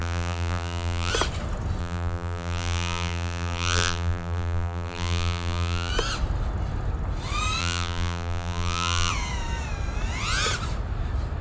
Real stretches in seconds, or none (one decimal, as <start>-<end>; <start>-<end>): 1.1-1.8; 5.9-7.6; 9.1-11.4